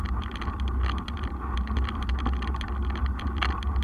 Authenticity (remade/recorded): recorded